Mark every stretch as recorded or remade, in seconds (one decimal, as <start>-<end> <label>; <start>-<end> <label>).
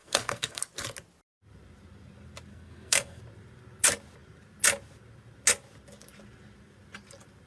0.0-0.6 remade; 0.6-2.5 recorded; 2.5-3.2 remade; 3.2-7.5 recorded